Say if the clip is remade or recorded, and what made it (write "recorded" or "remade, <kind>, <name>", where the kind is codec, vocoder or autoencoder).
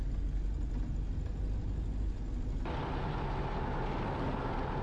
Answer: recorded